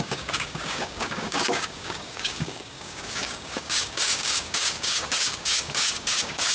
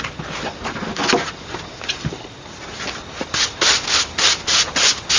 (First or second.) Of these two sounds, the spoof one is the first